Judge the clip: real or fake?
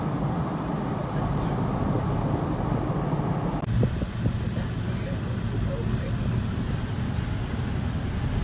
real